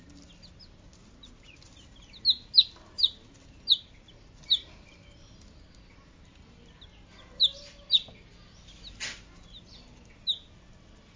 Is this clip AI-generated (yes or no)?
no